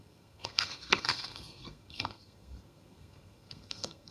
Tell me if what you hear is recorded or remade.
remade